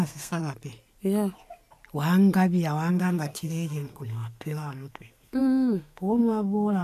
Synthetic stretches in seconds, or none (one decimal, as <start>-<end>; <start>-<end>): 0.0-0.4; 2.9-6.8